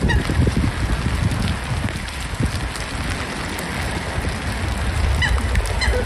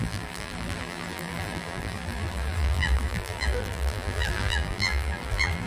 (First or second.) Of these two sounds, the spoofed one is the second